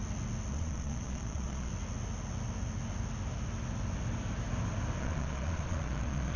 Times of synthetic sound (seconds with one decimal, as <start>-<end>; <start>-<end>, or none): 0.5-1.7; 5.0-6.4